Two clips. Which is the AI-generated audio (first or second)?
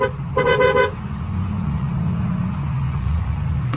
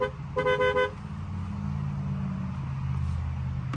first